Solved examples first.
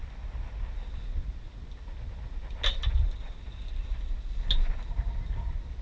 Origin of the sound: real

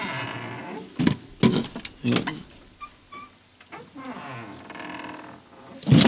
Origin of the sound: real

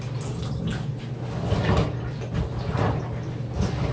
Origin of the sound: real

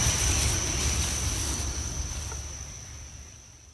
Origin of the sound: real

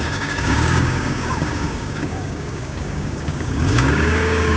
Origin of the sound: fake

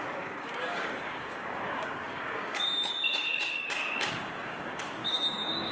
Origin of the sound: fake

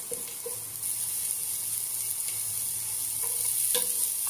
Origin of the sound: real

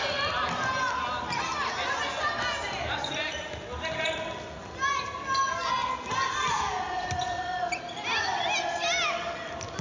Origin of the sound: real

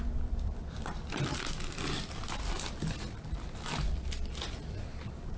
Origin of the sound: real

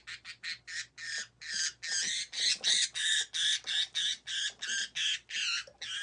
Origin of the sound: real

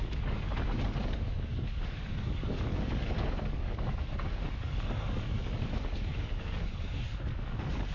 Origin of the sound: fake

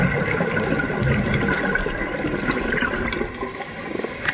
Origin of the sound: real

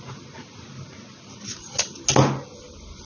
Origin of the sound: real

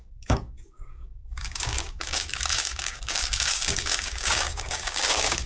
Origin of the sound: fake